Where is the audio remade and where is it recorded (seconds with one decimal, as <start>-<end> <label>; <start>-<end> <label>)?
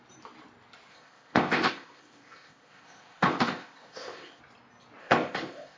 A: 0.0-0.9 recorded; 0.9-4.4 remade; 4.4-5.0 recorded; 5.0-5.8 remade